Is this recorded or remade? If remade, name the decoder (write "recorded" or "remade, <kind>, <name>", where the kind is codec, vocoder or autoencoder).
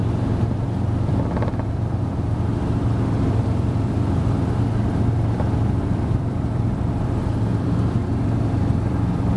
remade, vocoder, BigVGAN v2